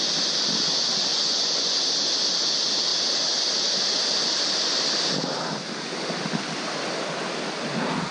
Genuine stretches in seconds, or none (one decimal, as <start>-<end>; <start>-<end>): 0.0-1.1; 1.8-8.1

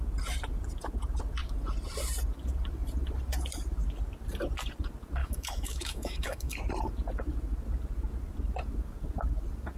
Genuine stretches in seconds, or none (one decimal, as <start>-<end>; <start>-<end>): 0.0-5.2; 6.6-9.8

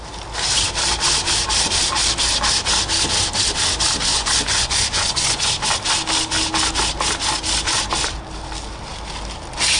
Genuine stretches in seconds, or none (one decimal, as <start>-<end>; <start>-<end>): 0.0-4.1; 5.5-9.8

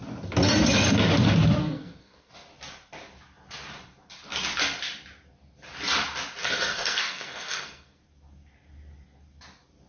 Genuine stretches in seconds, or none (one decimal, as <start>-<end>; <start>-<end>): 0.0-1.6; 2.3-6.4; 8.0-9.9

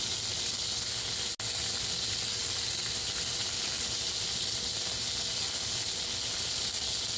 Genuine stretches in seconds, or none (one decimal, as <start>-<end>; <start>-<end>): 0.0-7.2

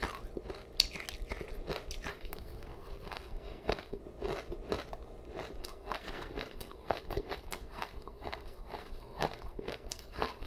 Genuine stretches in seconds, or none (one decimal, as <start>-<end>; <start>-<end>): 0.0-2.1; 4.0-5.6